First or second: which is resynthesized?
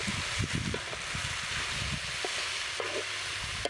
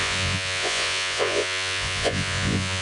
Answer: second